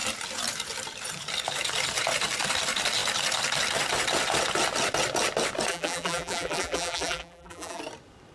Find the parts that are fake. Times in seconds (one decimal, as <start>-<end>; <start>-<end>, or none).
5.7-7.8